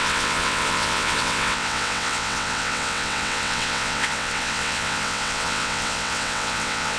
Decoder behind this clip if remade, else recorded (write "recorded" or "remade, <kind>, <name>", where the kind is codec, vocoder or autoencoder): remade, vocoder, WaveNeXt